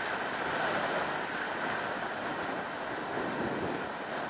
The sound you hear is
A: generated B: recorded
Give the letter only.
A